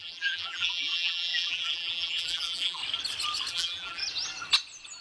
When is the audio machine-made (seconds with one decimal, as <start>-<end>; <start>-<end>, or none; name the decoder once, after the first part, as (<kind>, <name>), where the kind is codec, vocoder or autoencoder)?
0.0-2.8 (vocoder, BigVGAN v2); 3.5-4.0